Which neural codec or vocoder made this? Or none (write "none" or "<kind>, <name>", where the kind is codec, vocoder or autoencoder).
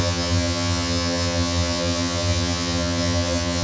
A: vocoder, HiFi-GAN